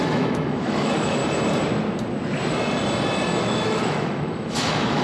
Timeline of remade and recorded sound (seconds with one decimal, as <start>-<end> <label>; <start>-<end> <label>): 0.0-1.2 remade; 1.2-3.4 recorded; 3.4-5.0 remade